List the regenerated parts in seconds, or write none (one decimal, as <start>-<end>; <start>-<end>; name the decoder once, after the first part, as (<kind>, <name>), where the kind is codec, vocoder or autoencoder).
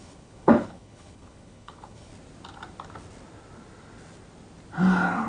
0.0-2.1 (codec, HILCodec)